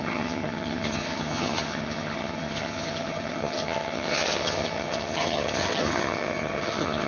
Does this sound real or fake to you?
fake